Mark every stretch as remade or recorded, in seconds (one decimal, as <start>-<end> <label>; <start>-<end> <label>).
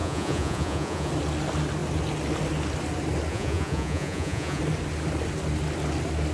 0.0-1.1 remade; 1.1-3.3 recorded; 3.3-4.6 remade; 4.6-6.3 recorded